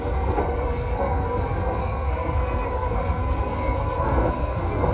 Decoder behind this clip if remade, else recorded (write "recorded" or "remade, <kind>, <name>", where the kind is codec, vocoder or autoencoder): remade, codec, SNAC